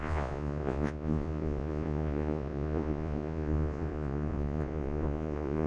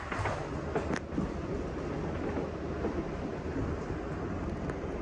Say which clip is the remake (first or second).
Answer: first